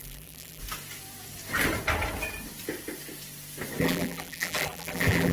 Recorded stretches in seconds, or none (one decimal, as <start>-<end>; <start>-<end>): 0.6-3.8